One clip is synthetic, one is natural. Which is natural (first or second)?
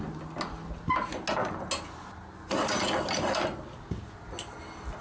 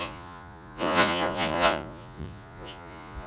first